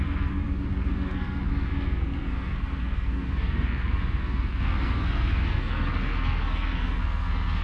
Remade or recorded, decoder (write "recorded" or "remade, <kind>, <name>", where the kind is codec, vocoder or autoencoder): remade, codec, SNAC